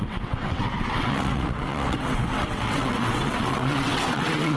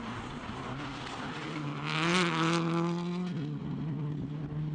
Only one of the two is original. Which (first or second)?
second